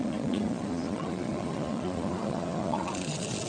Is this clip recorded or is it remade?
remade